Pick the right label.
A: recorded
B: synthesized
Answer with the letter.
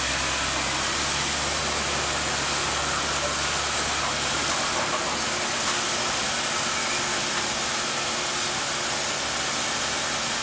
A